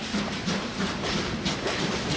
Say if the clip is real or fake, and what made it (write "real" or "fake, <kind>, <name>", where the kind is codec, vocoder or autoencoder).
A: fake, vocoder, BigVGAN v2